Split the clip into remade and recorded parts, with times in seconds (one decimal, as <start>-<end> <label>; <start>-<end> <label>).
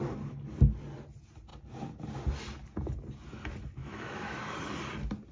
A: 0.0-3.8 recorded; 3.8-4.4 remade; 4.4-5.3 recorded